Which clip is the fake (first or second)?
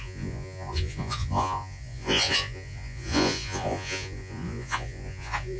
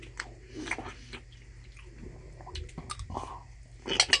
first